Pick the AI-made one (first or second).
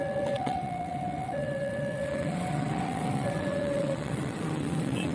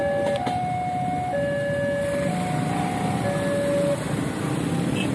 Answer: first